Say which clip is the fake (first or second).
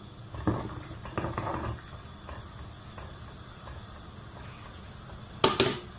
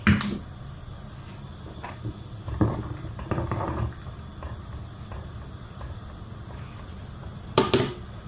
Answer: second